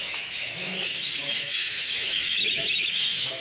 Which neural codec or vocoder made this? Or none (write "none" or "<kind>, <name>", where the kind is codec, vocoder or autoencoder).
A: autoencoder, DAC-VAE